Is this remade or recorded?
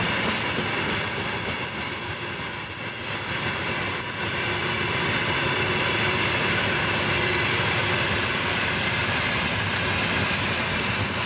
recorded